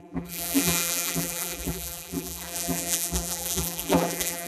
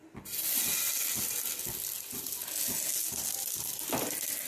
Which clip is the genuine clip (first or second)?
second